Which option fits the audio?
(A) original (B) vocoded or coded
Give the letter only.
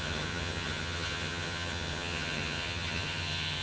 B